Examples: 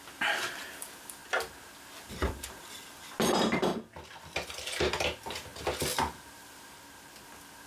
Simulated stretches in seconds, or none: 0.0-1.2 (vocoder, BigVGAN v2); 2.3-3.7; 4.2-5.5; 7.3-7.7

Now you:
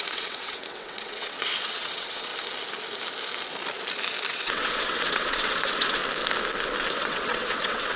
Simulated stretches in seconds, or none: 0.0-2.3 (vocoder, WaveNeXt); 4.3-6.0; 6.9-8.0

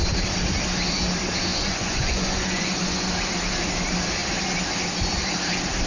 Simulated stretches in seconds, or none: 1.5-3.1 (vocoder, Vocos)

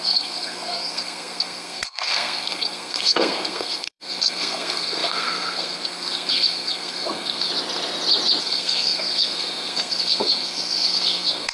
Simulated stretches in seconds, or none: 0.0-7.5 (codec, SNAC); 8.4-11.5

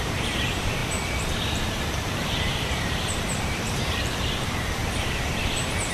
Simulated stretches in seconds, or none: 0.0-5.9 (vocoder, BigVGAN v2)

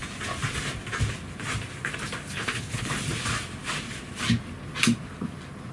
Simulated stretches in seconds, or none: 2.3-2.9 (codec, HILCodec)